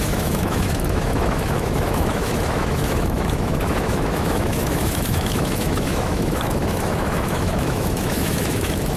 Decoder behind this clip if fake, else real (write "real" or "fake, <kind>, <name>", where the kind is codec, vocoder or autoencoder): fake, autoencoder, DAC-VAE